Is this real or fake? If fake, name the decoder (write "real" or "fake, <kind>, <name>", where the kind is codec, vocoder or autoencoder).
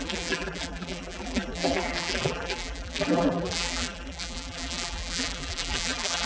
fake, vocoder, BigVGAN v2